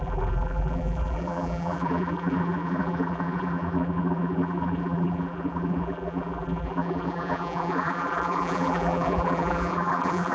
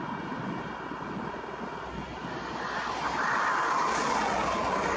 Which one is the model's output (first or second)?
first